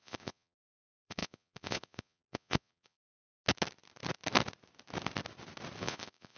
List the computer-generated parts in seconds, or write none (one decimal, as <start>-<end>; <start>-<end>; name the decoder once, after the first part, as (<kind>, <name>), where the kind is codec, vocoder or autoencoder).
0.0-3.2 (vocoder, Vocos); 5.8-6.4